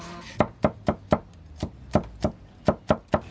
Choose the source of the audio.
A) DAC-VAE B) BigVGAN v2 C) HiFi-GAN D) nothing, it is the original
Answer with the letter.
D